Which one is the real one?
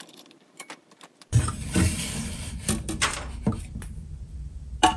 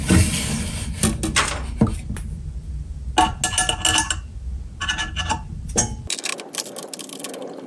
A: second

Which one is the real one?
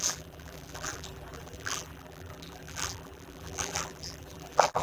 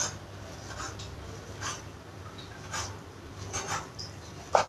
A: second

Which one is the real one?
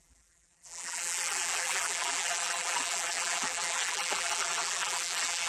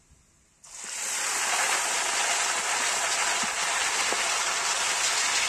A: second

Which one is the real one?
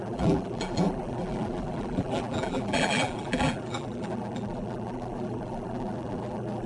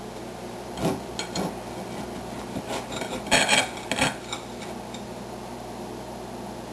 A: second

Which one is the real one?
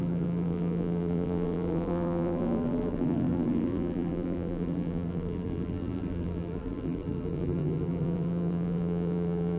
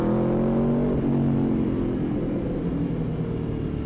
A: second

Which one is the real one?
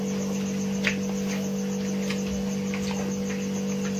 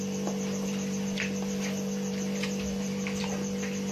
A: first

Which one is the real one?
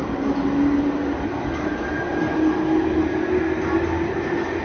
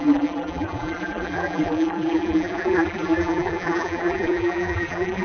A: first